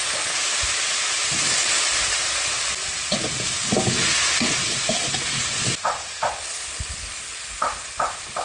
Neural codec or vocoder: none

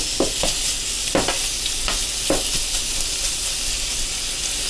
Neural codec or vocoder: none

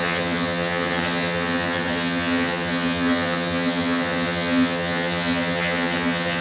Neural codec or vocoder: vocoder, HiFi-GAN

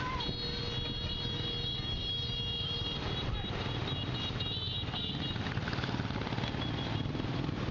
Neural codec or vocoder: none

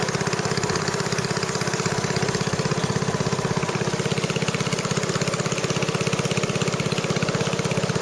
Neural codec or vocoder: none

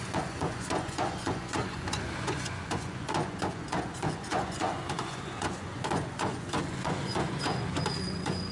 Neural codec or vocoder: vocoder, Vocos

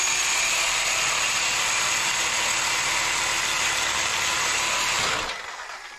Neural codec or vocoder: none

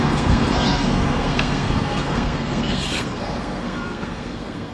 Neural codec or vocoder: codec, SNAC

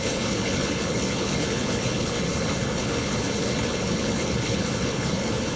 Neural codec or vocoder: codec, HILCodec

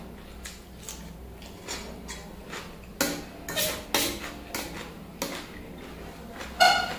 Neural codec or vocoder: none